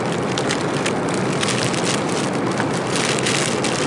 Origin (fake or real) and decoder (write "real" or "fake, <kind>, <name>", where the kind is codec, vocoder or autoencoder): real